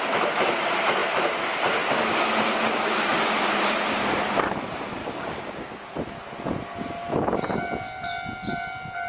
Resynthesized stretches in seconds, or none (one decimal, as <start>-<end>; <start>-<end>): 5.0-5.9